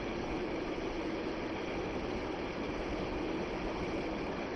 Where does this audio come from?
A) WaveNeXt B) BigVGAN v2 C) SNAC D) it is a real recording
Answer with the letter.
D